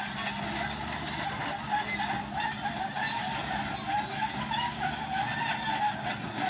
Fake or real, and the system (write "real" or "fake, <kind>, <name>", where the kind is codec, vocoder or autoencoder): real